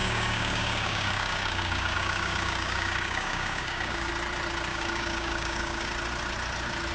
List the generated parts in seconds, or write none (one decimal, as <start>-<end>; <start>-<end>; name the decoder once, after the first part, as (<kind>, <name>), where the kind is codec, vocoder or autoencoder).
0.0-4.1 (codec, DAC); 4.7-5.9